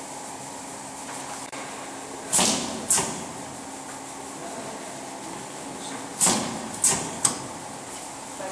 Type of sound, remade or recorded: recorded